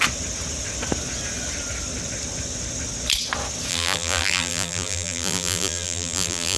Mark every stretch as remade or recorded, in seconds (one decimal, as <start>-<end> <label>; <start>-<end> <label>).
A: 0.0-3.7 recorded; 3.7-6.6 remade